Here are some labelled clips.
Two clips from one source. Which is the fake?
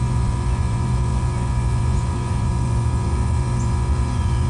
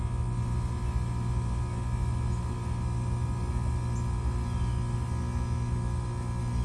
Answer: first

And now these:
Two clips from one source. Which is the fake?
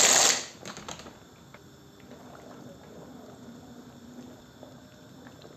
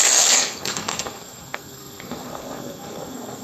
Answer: second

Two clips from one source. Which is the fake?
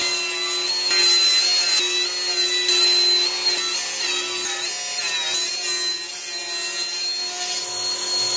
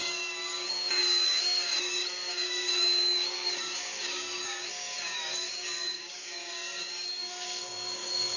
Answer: second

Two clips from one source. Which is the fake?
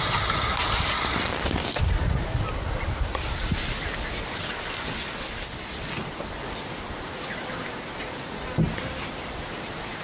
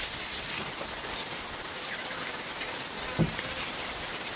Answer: second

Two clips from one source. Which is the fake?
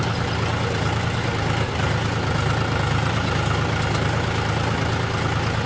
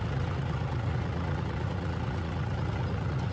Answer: second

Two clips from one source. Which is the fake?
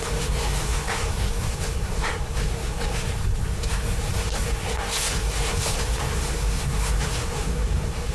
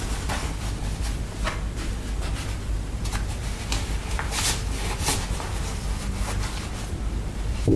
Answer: first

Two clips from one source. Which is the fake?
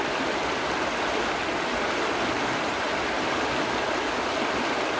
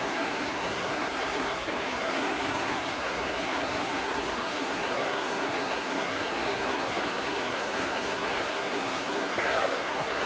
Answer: second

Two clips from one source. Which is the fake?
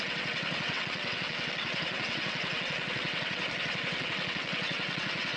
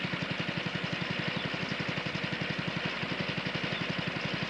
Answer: first